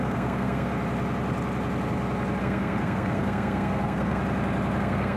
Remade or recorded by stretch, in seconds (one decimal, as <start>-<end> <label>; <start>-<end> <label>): 0.0-0.7 remade; 0.7-2.4 recorded; 2.4-4.2 remade; 4.2-4.8 recorded; 4.8-5.2 remade